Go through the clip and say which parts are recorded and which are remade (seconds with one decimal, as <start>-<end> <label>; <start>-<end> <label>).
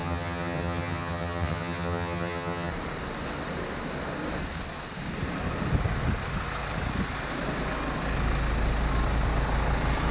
0.0-2.7 remade; 2.7-10.1 recorded